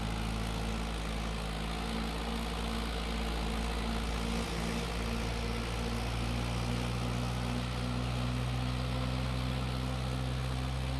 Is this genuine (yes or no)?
yes